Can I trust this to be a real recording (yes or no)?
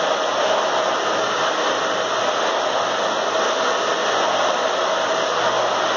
no